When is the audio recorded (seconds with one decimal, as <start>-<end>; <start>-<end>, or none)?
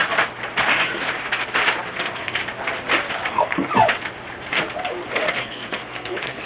0.0-1.9; 2.4-3.3; 3.7-5.3